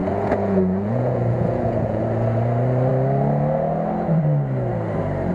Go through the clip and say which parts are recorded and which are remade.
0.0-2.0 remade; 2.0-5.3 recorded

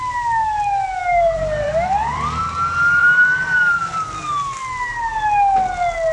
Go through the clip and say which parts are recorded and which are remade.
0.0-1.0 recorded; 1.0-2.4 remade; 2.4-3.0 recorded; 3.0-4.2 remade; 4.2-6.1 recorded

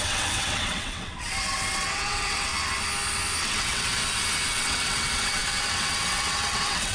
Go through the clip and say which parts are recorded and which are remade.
0.0-2.5 remade; 2.5-3.4 recorded; 3.4-4.0 remade; 4.0-4.5 recorded; 4.5-6.9 remade